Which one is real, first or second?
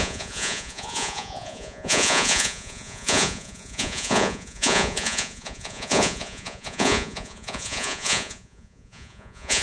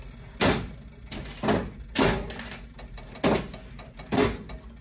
second